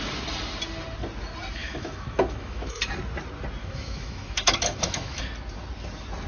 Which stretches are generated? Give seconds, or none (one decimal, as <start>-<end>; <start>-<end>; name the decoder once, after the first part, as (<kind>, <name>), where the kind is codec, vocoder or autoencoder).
1.6-2.9 (autoencoder, DAC-VAE); 3.6-5.2